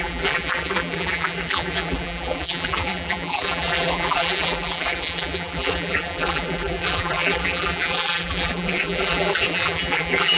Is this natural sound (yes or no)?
no